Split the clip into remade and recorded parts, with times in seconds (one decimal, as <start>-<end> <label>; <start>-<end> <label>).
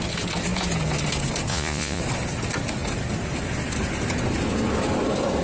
0.0-1.5 recorded; 1.5-2.0 remade; 2.0-5.4 recorded